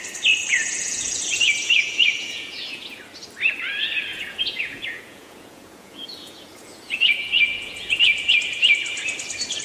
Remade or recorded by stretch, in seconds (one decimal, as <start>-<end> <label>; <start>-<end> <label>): 0.0-0.5 recorded; 0.5-3.0 remade; 3.0-4.1 recorded; 4.1-8.3 remade; 8.3-9.6 recorded